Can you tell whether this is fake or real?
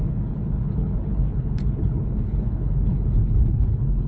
fake